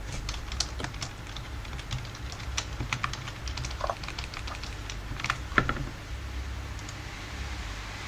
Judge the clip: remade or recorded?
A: recorded